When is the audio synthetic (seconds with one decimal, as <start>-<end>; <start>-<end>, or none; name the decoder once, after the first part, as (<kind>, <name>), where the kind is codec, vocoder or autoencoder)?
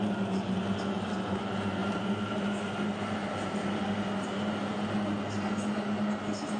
none